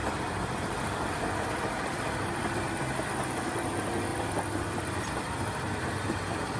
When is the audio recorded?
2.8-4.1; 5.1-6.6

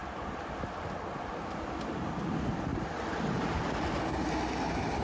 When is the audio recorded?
0.0-2.7; 4.0-5.0

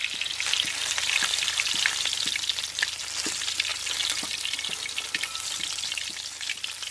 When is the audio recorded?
0.0-0.8; 3.0-6.9

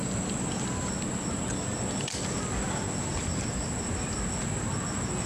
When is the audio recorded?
0.9-5.3